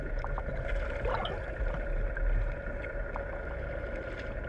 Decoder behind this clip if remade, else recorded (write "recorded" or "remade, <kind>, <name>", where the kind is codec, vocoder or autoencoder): recorded